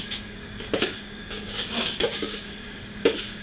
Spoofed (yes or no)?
yes